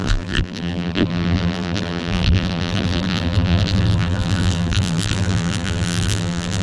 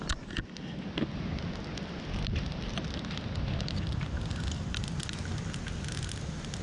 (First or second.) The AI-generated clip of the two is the first